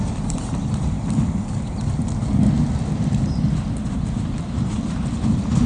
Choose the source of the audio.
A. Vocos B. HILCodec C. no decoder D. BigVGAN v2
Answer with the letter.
C